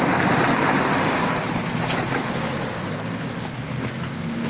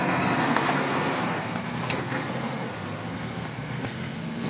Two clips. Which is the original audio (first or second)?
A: first